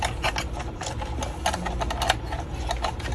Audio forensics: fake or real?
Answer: real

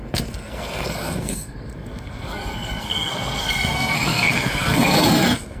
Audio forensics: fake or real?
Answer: fake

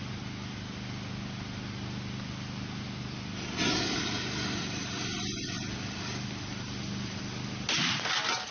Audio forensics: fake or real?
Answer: real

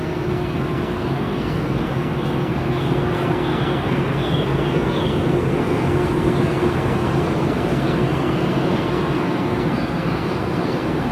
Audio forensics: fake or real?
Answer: fake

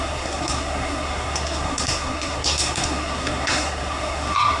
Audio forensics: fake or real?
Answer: fake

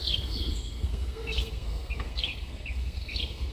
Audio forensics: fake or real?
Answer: fake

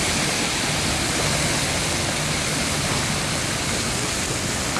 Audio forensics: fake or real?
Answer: real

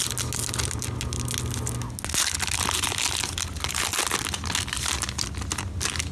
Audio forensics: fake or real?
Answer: real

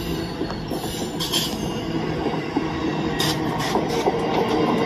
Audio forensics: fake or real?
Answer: real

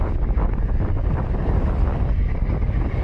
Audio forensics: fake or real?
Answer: real